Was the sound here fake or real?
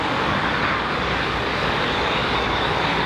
fake